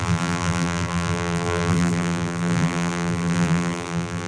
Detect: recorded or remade remade